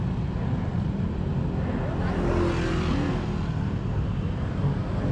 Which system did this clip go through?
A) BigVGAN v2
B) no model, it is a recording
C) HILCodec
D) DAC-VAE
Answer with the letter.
B